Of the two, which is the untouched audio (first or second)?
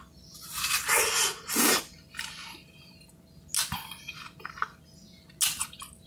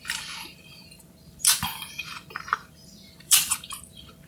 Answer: first